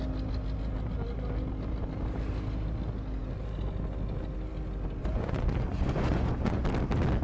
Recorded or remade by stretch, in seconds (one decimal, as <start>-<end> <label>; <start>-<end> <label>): 0.0-5.0 recorded; 5.0-6.6 remade; 6.6-7.2 recorded